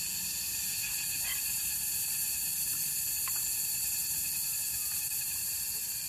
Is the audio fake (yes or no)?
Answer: no